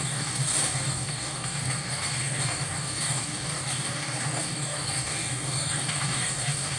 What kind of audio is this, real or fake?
fake